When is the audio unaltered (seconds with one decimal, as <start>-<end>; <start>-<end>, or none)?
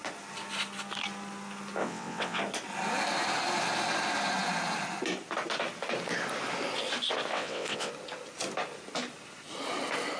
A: 0.0-1.8; 2.4-7.3; 7.9-10.2